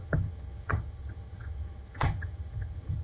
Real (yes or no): no